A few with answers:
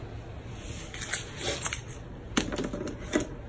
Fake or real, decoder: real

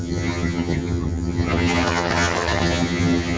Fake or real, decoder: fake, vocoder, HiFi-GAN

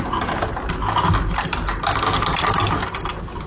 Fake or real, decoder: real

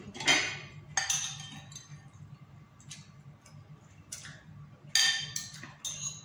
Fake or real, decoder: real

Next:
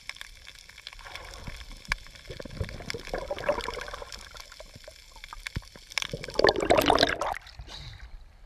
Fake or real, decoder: real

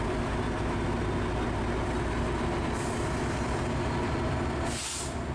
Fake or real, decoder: real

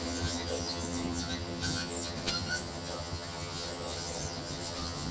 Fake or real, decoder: fake, vocoder, HiFi-GAN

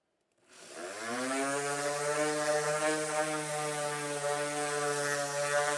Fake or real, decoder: real